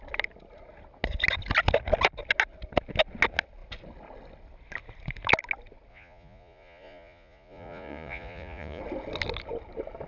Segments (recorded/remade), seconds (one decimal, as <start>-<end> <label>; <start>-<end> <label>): 0.0-5.9 recorded; 5.9-8.8 remade; 8.8-10.1 recorded